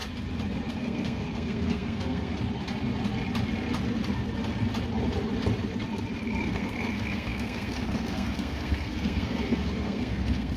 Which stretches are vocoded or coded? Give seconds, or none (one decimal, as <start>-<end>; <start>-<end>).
0.7-2.3; 6.4-10.6